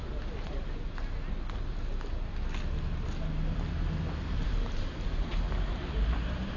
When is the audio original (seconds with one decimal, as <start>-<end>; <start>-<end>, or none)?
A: 0.0-4.0

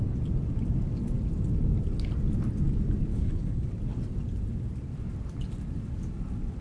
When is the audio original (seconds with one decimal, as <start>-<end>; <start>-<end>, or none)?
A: 0.0-3.1; 3.7-6.6

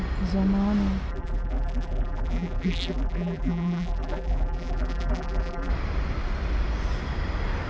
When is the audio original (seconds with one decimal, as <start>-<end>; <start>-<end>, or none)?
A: 0.0-1.1; 5.7-7.7

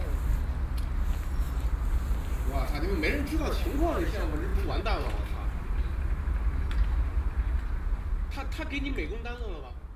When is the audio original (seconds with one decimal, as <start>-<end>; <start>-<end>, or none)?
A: 0.0-4.5; 8.1-10.0

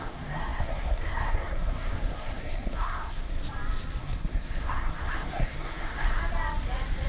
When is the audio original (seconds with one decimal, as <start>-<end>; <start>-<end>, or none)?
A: 3.3-4.0; 6.2-7.1

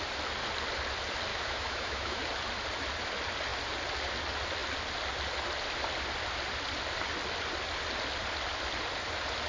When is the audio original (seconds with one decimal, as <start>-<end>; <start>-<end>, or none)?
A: 0.0-1.3; 2.2-9.5

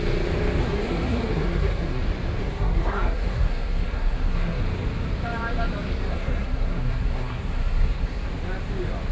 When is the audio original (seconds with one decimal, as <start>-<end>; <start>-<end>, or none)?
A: 0.0-0.6; 2.0-2.4; 4.6-6.1; 8.3-9.1

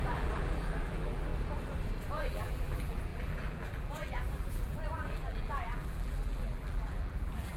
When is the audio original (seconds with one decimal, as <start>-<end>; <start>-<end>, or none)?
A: 1.3-2.1